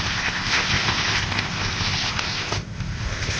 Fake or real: fake